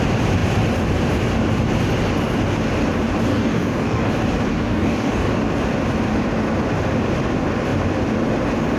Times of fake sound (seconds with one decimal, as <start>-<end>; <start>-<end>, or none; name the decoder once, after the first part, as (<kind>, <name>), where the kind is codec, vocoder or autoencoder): 3.3-4.1 (codec, DAC); 4.5-5.4